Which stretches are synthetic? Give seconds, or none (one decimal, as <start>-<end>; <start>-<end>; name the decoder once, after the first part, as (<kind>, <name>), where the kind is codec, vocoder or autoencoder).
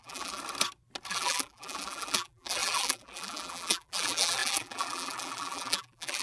0.0-0.4 (vocoder, BigVGAN v2); 1.1-6.2